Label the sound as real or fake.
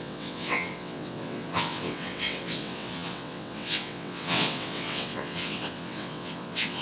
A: fake